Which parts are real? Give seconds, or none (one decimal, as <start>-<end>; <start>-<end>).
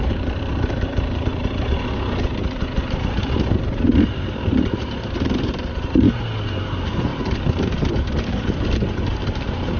1.3-4.1; 7.1-7.9